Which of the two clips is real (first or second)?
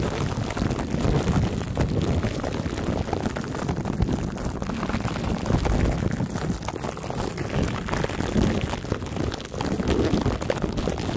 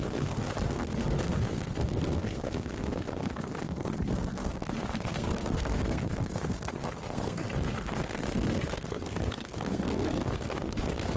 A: first